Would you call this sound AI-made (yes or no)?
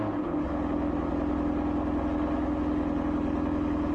no